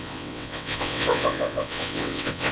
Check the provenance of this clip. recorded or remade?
remade